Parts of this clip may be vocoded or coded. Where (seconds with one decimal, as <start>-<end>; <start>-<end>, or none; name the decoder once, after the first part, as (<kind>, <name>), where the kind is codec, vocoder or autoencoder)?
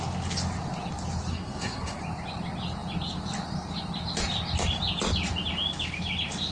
1.3-2.0 (codec, SNAC)